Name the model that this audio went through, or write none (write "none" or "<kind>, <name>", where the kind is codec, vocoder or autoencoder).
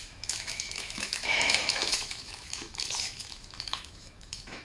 autoencoder, DAC-VAE